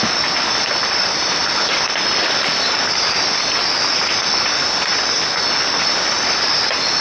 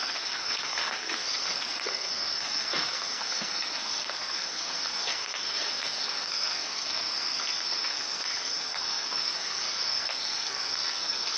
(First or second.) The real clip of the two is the first